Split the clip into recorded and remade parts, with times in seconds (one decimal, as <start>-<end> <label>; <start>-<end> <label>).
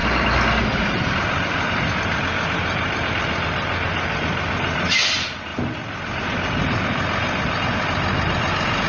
0.0-8.9 recorded